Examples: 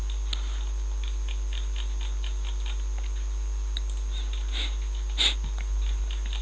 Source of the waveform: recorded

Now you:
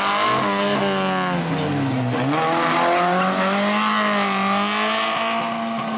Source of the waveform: recorded